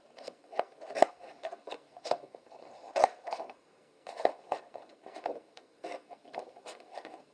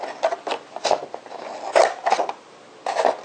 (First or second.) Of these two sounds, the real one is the second